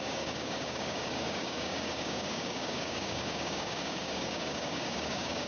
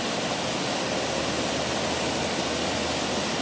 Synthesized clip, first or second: first